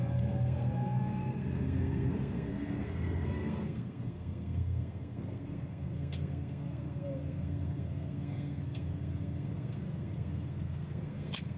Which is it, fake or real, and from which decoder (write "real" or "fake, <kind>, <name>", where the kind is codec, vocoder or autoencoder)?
fake, codec, SNAC